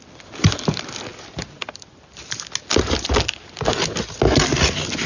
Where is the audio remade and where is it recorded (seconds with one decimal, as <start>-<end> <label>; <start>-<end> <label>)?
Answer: 0.0-5.1 recorded